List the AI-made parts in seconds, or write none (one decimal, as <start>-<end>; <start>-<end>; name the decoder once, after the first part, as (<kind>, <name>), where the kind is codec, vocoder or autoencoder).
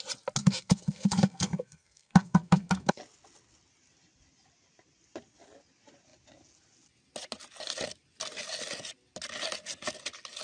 0.4-3.0 (codec, SNAC)